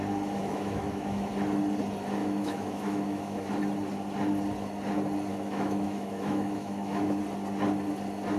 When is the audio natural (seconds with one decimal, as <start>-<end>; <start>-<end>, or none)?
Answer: 0.0-0.4; 1.3-2.2; 3.5-5.3; 7.2-8.4